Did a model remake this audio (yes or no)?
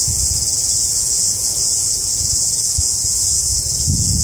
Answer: yes